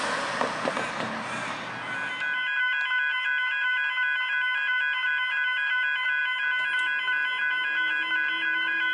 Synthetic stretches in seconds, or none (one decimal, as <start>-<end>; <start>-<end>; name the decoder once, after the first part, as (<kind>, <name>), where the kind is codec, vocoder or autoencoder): none